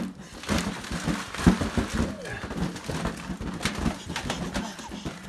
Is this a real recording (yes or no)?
yes